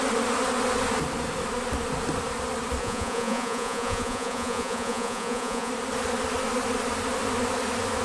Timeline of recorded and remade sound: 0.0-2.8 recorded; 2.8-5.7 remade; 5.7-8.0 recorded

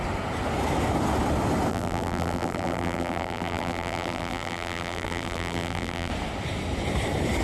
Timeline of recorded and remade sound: 0.0-1.7 recorded; 1.7-6.1 remade; 6.1-7.4 recorded

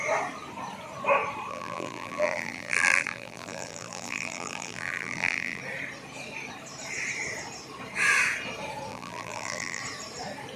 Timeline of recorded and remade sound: 0.0-1.5 recorded; 1.5-5.6 remade; 5.6-8.9 recorded; 8.9-9.8 remade; 9.8-10.6 recorded